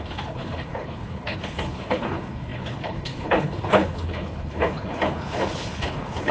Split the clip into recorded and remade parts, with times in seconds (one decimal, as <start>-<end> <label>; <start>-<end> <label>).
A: 0.0-6.3 remade